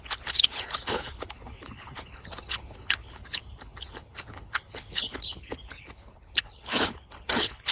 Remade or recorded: remade